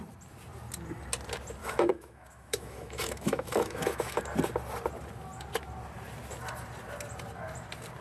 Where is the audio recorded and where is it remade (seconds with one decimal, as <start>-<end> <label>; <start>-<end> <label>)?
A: 0.0-1.6 recorded; 1.6-4.2 remade; 4.2-8.0 recorded